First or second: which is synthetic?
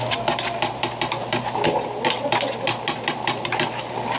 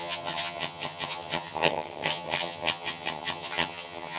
second